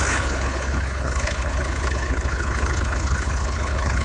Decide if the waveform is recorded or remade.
remade